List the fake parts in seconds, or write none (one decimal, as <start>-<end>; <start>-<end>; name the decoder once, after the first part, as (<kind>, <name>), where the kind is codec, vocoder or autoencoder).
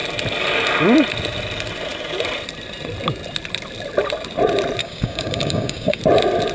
4.8-6.0 (codec, DAC)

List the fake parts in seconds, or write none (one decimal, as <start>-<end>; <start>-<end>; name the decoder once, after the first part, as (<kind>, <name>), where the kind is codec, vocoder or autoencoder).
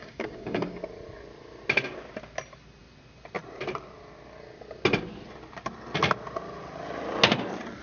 0.0-0.8 (codec, DAC)